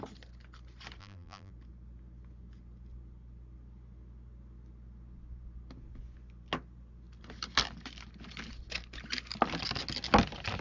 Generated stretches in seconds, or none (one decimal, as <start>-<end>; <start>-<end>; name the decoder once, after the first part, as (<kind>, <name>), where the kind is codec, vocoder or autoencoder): 1.0-1.5 (vocoder, BigVGAN v2)

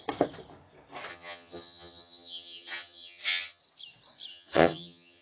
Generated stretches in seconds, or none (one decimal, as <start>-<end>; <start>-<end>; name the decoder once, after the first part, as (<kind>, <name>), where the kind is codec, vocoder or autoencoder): 1.1-3.6 (vocoder, HiFi-GAN); 4.3-5.2

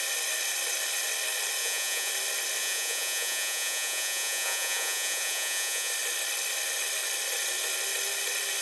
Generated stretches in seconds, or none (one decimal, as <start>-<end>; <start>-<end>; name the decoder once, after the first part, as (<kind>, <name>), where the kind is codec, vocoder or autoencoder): 1.6-2.1 (vocoder, Vocos); 2.6-5.9

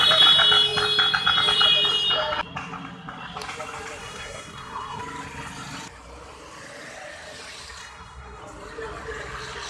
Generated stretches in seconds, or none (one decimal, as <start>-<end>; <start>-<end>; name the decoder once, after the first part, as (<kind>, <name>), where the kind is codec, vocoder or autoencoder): 4.0-5.0 (codec, SNAC); 7.8-8.4

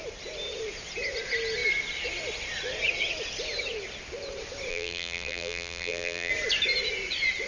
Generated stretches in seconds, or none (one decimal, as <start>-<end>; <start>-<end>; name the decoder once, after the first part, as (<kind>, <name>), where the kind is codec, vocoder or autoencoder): 4.7-6.3 (vocoder, BigVGAN v2)